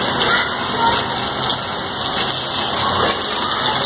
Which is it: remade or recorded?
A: recorded